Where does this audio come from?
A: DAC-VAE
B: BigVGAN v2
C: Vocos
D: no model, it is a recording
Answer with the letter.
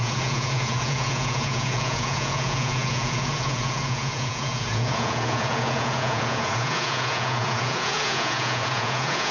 C